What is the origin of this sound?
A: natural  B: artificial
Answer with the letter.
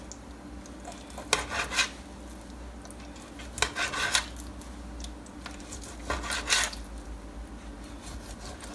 A